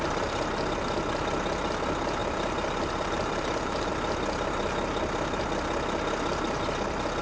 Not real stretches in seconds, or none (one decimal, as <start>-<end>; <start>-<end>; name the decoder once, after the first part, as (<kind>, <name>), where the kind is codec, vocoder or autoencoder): 2.2-3.9 (vocoder, BigVGAN v2)